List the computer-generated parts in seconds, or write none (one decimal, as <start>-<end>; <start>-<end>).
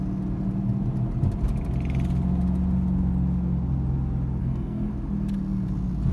4.4-4.9